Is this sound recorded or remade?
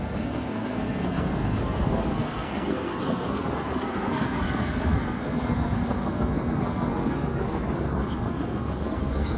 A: remade